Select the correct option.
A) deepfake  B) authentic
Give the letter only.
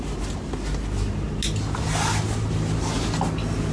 B